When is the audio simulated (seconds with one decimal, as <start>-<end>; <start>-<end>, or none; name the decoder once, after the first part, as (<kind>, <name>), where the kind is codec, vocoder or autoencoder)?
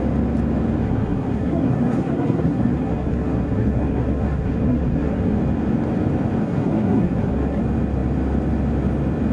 0.8-5.4 (codec, SNAC); 6.4-7.6